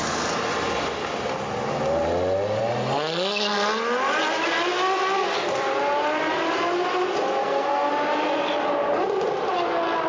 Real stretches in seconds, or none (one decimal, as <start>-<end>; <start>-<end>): 0.0-7.4; 7.9-10.1